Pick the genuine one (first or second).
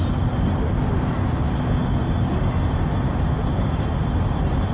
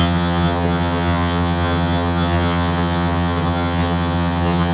first